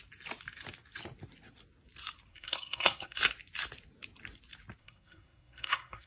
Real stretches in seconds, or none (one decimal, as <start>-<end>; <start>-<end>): 0.0-2.3; 3.2-4.8